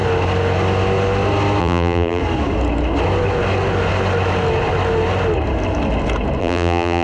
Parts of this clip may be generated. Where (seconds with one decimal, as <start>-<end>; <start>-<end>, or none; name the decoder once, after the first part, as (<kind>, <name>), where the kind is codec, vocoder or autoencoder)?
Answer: 1.6-2.2 (vocoder, BigVGAN v2); 6.4-7.0